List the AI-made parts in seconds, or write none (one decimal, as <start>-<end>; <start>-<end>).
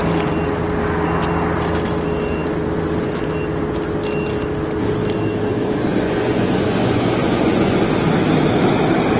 5.5-7.9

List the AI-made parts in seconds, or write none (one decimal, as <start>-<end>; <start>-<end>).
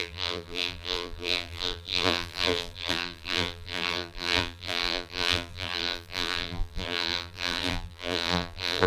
0.0-8.9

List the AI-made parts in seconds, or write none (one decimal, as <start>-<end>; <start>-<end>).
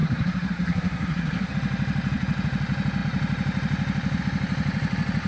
0.0-1.5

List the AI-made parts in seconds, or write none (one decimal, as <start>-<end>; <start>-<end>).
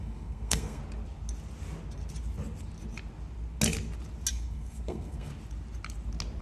0.0-0.8; 4.3-5.3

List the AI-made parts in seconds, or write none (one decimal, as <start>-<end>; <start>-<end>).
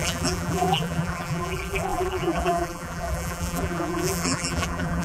0.0-5.0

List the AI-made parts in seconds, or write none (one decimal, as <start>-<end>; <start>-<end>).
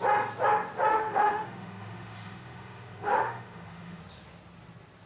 0.9-4.0